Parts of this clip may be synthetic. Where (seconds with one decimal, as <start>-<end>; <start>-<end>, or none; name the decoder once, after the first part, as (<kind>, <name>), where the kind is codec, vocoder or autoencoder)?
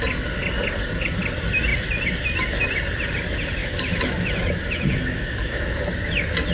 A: 3.6-5.8 (autoencoder, DAC-VAE)